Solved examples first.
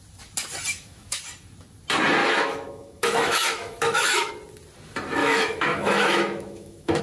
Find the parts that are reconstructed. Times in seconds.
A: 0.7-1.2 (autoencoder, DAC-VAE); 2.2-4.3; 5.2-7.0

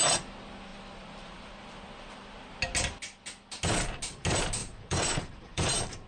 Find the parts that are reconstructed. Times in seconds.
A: 0.7-1.5 (vocoder, BigVGAN v2); 4.6-6.1

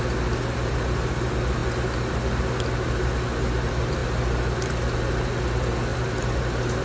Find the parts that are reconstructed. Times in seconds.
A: none

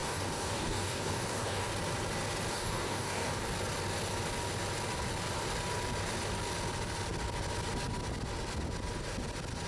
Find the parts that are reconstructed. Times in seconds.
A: 0.0-1.7 (codec, DAC); 2.5-3.4

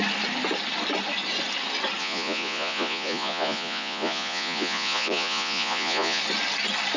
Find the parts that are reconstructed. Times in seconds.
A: 2.0-6.2 (vocoder, Vocos)

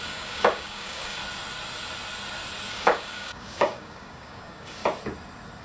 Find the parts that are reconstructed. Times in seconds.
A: 0.0-1.2 (codec, DAC); 2.7-4.8

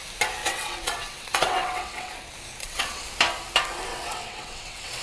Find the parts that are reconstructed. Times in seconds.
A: 0.4-2.1 (vocoder, WaveNeXt); 2.6-3.1; 3.9-5.0

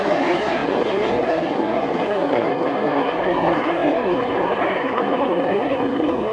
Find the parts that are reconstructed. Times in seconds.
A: 0.0-6.3 (codec, SNAC)